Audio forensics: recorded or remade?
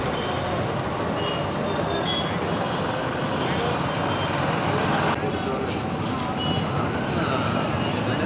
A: recorded